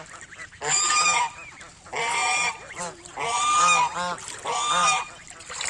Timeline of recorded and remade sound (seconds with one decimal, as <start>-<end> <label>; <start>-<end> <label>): 0.0-5.7 recorded

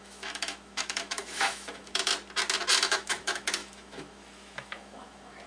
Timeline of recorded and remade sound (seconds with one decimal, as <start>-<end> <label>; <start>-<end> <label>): 0.0-2.1 remade; 2.1-2.8 recorded; 2.8-5.5 remade

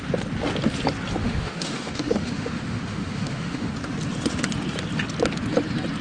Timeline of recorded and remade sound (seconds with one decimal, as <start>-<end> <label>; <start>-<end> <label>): 0.0-1.2 recorded; 1.2-3.7 remade; 3.7-6.0 recorded

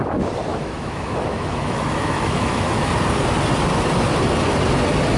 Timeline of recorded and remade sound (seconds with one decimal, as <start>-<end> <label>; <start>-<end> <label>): 0.0-0.5 recorded; 0.5-2.9 remade; 2.9-5.2 recorded

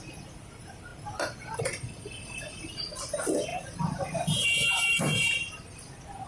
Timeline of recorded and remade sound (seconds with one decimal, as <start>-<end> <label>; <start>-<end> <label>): 0.0-6.3 recorded